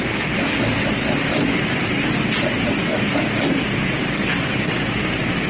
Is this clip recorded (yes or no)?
yes